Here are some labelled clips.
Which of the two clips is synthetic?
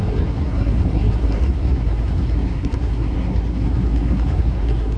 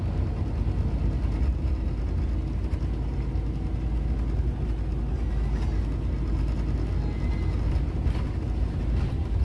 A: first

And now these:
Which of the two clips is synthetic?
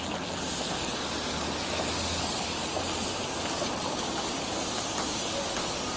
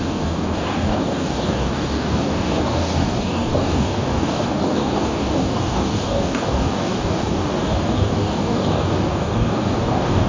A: second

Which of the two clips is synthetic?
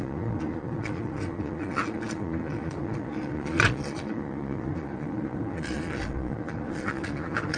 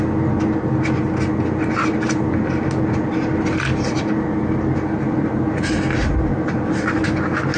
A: first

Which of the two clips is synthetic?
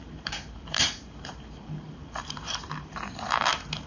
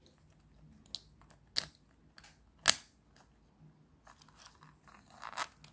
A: first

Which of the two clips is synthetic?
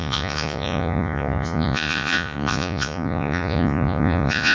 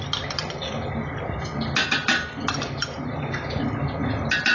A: first